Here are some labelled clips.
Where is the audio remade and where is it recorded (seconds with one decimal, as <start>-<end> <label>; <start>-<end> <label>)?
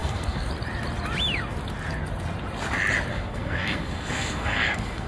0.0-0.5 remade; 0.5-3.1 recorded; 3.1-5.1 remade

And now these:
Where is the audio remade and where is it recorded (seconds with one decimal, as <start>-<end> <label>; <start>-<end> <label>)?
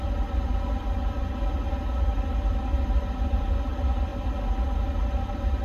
0.0-5.6 recorded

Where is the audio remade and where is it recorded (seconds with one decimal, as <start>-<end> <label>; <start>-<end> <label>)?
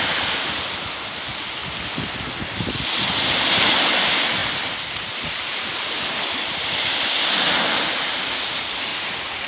0.0-8.9 recorded; 8.9-9.5 remade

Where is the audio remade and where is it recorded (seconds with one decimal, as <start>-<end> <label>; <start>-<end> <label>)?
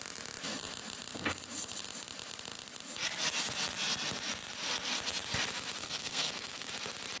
0.0-5.8 recorded; 5.8-6.7 remade; 6.7-7.2 recorded